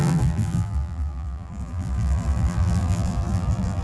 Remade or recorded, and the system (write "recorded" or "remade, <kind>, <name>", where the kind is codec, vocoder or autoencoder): remade, vocoder, BigVGAN v2